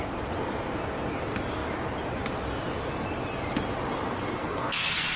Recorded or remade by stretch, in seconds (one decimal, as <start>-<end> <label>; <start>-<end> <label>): 0.0-4.4 recorded; 4.4-5.2 remade